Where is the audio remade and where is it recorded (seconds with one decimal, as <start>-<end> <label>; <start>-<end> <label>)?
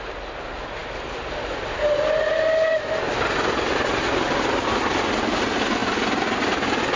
0.0-7.0 recorded